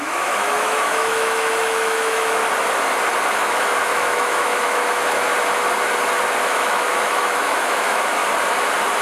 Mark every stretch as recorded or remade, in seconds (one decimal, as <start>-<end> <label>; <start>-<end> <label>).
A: 0.0-2.4 remade; 2.4-3.3 recorded; 3.3-5.3 remade; 5.3-6.4 recorded; 6.4-8.2 remade; 8.2-9.0 recorded